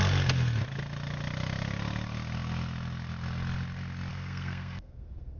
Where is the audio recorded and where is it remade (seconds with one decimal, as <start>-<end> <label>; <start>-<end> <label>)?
0.0-4.1 recorded; 4.1-5.4 remade